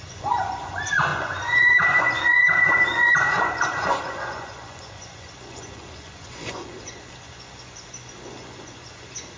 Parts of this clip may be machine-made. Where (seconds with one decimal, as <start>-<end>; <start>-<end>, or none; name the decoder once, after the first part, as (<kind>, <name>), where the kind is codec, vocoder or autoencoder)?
0.0-9.4 (vocoder, Vocos)